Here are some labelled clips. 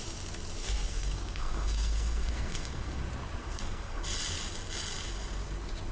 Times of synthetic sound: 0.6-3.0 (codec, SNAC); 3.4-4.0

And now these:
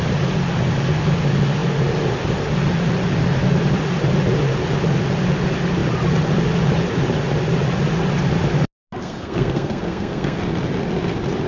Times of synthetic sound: 9.0-10.4 (codec, SNAC)